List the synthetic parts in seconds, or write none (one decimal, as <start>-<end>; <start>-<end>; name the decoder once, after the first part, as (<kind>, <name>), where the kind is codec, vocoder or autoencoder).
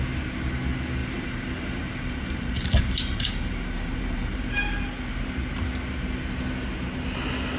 1.0-5.3 (vocoder, BigVGAN v2)